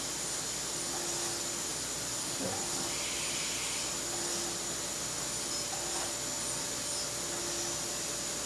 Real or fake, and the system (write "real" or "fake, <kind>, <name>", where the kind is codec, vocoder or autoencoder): real